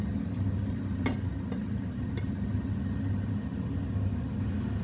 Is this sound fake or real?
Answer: real